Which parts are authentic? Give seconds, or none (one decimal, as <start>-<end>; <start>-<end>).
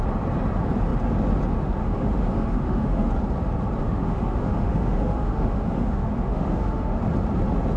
0.0-1.8; 3.1-3.8; 7.0-7.8